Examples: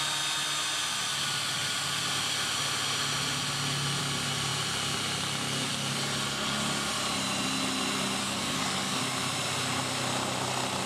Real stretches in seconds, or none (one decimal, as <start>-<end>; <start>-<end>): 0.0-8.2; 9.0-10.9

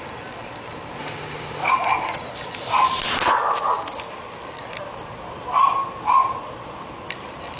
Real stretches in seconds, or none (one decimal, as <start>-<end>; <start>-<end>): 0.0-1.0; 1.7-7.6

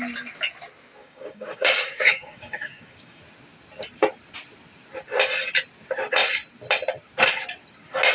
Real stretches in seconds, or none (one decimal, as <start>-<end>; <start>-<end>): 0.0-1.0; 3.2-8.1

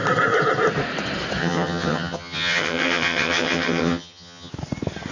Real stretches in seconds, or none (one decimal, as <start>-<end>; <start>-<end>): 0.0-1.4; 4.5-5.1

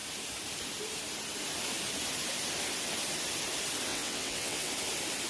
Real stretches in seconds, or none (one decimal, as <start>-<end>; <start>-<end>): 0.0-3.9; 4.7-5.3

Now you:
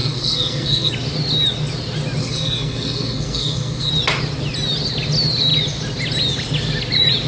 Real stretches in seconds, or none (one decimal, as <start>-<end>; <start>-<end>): 0.9-2.2; 3.9-7.3

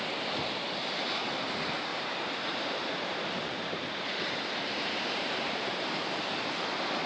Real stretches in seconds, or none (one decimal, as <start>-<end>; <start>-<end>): 0.0-1.9; 6.2-7.1